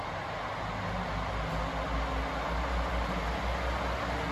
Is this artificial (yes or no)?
no